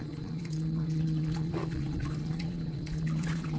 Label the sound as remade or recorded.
remade